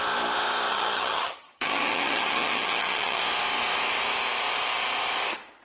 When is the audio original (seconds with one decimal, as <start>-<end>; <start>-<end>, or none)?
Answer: 0.0-0.7; 3.2-5.6